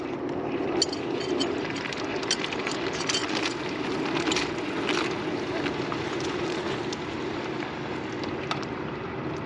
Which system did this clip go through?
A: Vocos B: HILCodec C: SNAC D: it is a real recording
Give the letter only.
D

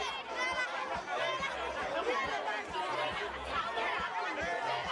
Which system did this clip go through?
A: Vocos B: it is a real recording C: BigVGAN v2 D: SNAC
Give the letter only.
B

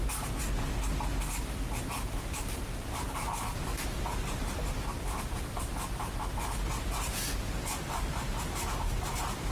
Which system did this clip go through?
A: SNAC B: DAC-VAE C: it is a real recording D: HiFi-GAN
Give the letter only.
C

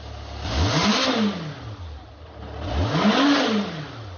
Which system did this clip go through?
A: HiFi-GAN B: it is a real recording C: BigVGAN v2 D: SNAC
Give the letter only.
B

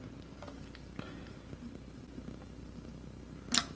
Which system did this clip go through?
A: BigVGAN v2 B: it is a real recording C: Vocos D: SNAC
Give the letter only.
B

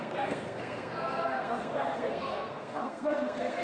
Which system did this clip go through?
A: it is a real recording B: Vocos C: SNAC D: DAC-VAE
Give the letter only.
C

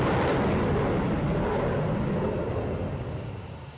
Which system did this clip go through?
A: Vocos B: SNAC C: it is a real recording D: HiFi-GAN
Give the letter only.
C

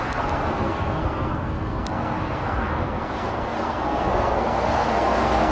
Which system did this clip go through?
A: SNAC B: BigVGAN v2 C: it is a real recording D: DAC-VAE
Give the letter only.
A